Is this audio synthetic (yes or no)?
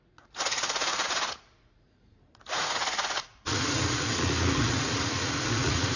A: yes